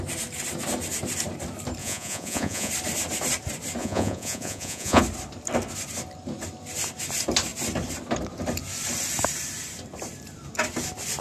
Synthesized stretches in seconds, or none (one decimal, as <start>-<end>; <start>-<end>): 1.8-2.7; 3.8-5.0